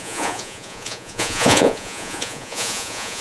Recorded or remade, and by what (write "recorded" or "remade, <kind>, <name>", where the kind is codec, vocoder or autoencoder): remade, vocoder, Vocos